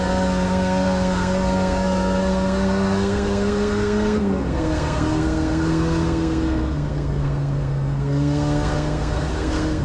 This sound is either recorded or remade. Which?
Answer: remade